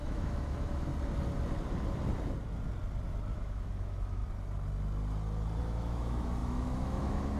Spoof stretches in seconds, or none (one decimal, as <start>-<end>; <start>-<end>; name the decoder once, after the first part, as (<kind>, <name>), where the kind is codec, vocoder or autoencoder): 0.0-0.9 (autoencoder, DAC-VAE); 3.3-4.2; 5.6-7.4